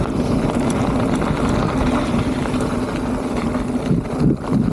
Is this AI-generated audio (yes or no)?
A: no